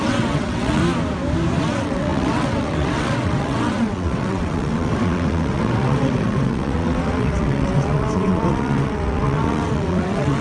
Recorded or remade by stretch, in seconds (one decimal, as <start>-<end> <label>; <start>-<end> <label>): 0.0-0.8 remade; 0.8-1.6 recorded; 1.6-10.4 remade